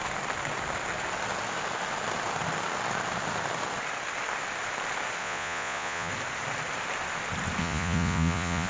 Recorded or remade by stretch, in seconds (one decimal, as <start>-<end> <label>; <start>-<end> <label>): 0.0-5.2 recorded; 5.2-6.1 remade; 6.1-7.6 recorded; 7.6-8.7 remade